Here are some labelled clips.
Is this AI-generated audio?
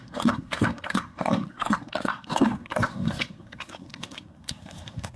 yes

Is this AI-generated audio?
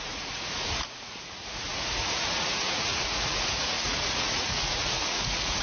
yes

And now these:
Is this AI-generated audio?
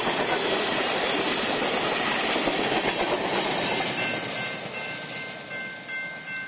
no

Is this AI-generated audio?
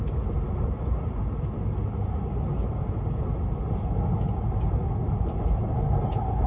no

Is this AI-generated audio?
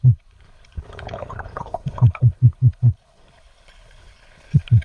yes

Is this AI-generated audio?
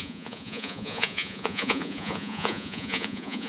yes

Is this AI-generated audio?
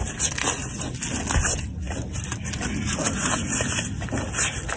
no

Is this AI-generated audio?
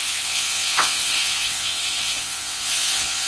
yes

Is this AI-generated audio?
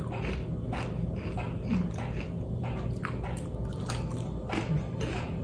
no